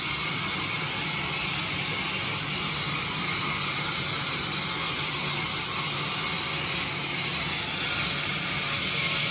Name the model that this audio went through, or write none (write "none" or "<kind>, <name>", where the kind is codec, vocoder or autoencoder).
none